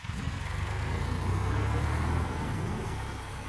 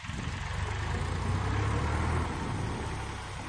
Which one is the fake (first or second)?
first